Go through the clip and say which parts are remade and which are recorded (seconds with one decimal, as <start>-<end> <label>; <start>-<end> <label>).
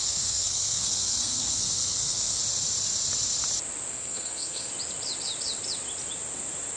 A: 0.0-2.4 remade; 2.4-3.9 recorded; 3.9-4.7 remade; 4.7-6.8 recorded